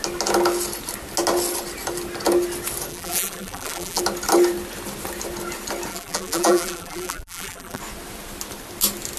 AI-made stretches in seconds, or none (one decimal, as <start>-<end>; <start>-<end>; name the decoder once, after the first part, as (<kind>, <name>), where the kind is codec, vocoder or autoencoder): 2.9-4.0 (vocoder, BigVGAN v2); 5.9-7.8